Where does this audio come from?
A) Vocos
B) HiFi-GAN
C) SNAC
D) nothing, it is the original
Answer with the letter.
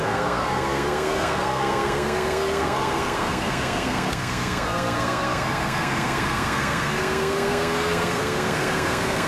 C